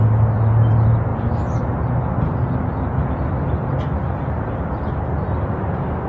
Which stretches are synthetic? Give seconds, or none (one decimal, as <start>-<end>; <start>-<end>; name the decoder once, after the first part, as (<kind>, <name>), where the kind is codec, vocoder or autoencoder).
1.1-1.6 (vocoder, BigVGAN v2); 2.8-4.7